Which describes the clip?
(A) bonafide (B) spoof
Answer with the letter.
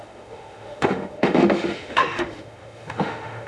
B